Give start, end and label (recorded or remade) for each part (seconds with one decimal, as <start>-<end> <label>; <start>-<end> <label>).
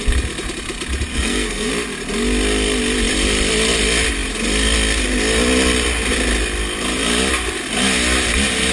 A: 0.0-1.1 recorded; 1.1-1.7 remade; 1.7-8.7 recorded